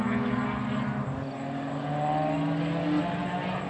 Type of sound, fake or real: real